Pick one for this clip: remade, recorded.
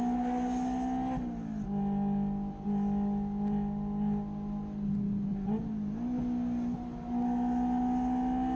recorded